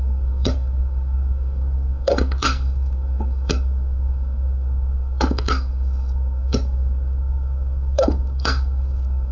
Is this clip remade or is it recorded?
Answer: remade